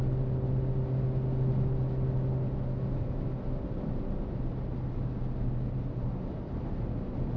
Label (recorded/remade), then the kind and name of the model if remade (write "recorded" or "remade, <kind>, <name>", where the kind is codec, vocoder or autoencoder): recorded